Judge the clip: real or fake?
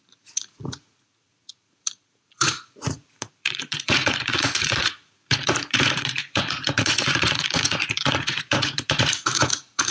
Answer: fake